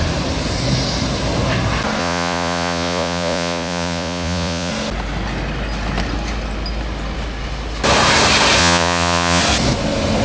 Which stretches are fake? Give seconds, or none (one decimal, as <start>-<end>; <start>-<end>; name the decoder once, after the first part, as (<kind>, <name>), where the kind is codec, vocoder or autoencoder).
2.0-4.7 (vocoder, Vocos); 8.6-9.4